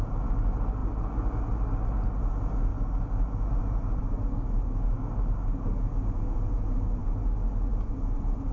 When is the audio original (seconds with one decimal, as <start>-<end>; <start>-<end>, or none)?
0.0-8.5